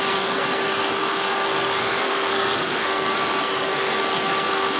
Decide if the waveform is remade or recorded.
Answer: remade